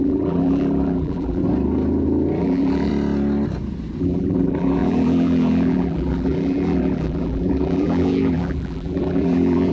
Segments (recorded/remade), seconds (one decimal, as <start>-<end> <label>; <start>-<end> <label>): 0.0-1.4 remade; 1.4-2.4 recorded; 2.4-2.9 remade; 2.9-4.0 recorded; 4.0-9.7 remade